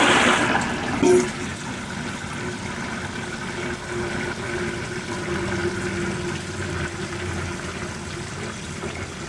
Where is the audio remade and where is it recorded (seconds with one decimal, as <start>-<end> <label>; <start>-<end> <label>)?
0.0-9.3 recorded